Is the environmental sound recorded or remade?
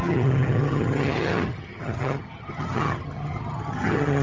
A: remade